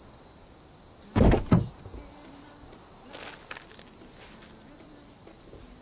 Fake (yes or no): no